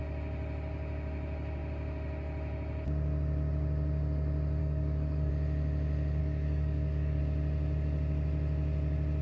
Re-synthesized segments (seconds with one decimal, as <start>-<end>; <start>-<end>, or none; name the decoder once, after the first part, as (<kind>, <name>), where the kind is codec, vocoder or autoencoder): 4.6-5.3 (codec, DAC); 6.2-7.2